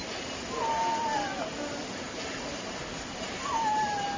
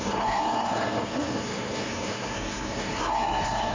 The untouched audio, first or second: first